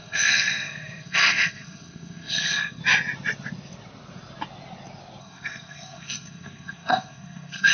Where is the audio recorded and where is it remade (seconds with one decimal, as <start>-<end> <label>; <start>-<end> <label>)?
0.0-2.8 remade; 2.8-5.2 recorded; 5.2-7.7 remade